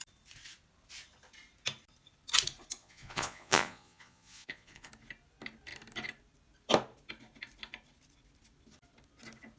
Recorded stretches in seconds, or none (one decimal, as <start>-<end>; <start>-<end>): 0.0-2.8; 4.9-9.6